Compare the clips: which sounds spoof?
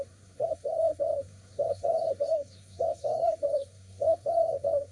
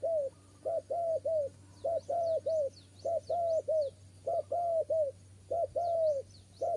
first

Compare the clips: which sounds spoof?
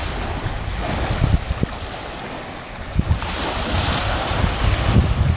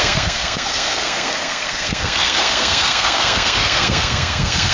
second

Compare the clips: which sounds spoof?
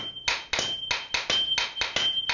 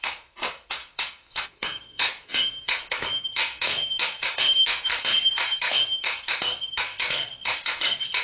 second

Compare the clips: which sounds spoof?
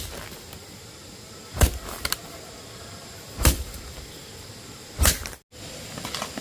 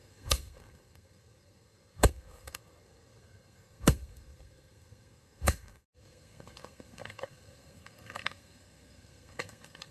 second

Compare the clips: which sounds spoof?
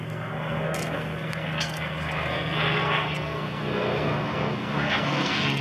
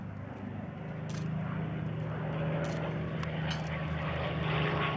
first